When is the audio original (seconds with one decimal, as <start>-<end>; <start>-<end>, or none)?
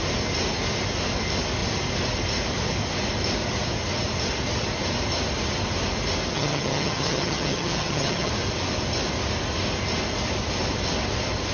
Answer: 0.0-6.3; 8.3-11.5